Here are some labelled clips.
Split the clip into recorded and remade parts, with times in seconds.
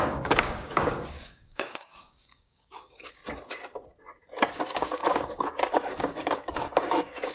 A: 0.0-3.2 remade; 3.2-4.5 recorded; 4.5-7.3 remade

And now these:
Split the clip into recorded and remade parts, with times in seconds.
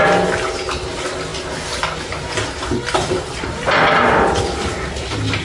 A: 0.0-5.4 recorded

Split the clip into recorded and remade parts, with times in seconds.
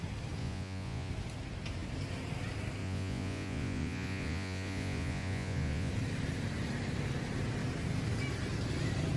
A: 0.0-0.4 recorded; 0.4-1.1 remade; 1.1-2.8 recorded; 2.8-5.9 remade; 5.9-9.2 recorded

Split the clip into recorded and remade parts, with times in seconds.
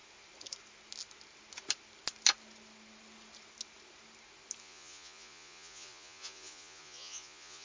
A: 0.0-4.6 recorded; 4.6-7.6 remade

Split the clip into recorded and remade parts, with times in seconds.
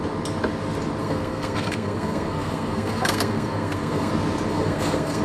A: 0.0-1.0 recorded; 1.0-4.1 remade; 4.1-4.5 recorded; 4.5-5.2 remade